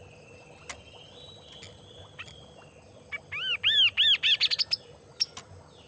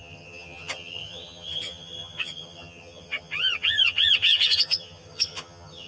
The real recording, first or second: first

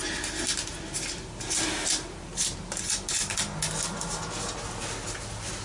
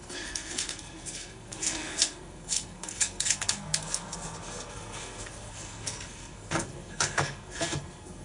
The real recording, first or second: first